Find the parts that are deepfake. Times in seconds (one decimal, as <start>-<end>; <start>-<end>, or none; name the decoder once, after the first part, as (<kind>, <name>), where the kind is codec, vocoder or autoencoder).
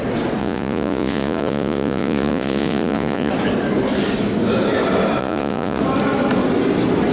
0.4-3.3 (vocoder, Vocos); 5.2-5.8